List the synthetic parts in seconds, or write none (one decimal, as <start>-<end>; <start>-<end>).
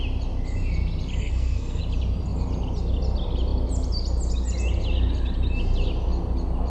1.2-1.8